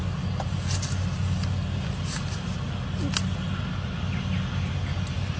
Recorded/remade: recorded